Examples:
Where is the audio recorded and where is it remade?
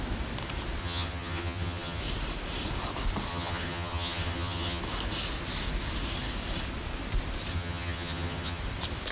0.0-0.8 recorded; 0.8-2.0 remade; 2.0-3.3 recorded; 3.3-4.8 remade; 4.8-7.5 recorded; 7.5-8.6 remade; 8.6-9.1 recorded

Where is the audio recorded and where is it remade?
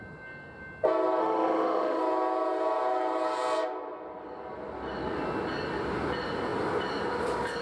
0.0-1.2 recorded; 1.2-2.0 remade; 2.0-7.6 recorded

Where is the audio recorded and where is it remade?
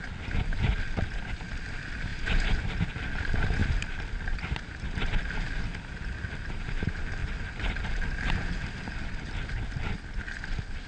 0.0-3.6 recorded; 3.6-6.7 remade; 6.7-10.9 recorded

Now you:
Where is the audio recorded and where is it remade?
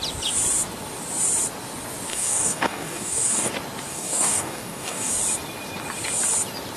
0.0-2.1 recorded; 2.1-3.5 remade; 3.5-3.9 recorded; 3.9-5.1 remade; 5.1-6.8 recorded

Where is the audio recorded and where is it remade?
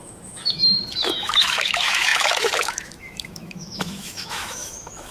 0.0-5.1 remade